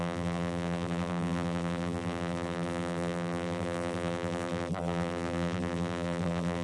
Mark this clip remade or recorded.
remade